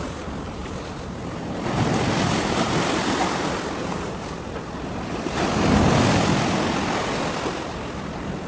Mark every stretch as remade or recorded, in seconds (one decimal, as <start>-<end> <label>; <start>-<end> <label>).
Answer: 0.0-0.6 recorded; 0.6-5.7 remade; 5.7-8.5 recorded

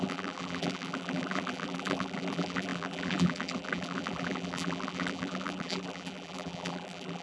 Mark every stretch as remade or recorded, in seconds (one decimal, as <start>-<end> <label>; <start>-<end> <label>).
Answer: 0.0-7.2 remade

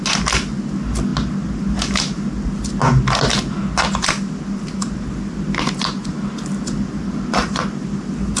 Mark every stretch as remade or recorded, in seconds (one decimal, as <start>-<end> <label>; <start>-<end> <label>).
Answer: 0.0-8.4 recorded

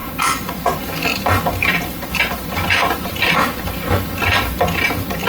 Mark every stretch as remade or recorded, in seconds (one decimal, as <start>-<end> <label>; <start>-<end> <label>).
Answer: 0.0-0.8 remade; 0.8-1.6 recorded; 1.6-2.1 remade; 2.1-2.8 recorded; 2.8-3.4 remade; 3.4-5.3 recorded